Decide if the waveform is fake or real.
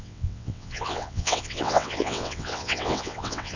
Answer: fake